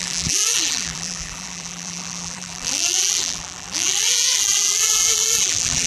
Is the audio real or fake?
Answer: fake